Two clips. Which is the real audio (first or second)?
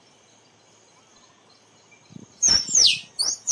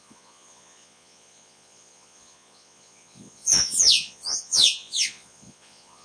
first